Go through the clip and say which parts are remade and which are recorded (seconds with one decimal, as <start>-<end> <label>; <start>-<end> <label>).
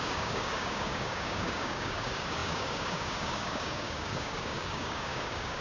0.0-5.6 remade